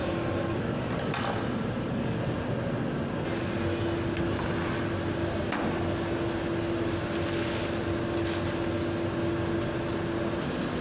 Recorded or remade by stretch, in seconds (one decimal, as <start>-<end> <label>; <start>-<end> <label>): 0.0-10.8 recorded